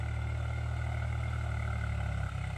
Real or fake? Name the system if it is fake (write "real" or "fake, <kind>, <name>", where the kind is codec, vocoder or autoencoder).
real